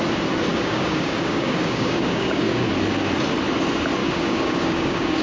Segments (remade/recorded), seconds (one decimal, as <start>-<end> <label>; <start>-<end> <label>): 0.0-0.5 recorded; 0.5-2.7 remade; 2.7-4.0 recorded; 4.0-5.2 remade

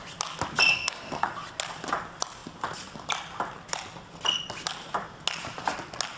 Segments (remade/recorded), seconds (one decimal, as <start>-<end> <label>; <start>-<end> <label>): 0.0-0.7 recorded; 0.7-1.3 remade; 1.3-6.2 recorded

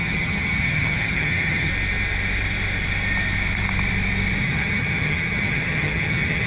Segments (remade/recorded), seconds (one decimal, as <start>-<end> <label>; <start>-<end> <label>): 0.0-1.7 remade; 1.7-4.4 recorded; 4.4-6.5 remade